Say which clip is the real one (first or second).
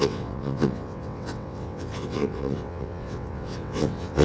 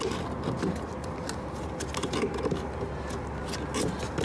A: second